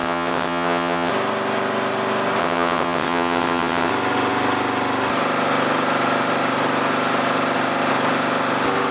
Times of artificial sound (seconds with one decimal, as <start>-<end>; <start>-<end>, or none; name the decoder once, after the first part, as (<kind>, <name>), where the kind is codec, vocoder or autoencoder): 0.0-1.1 (vocoder, WaveNeXt); 2.4-3.9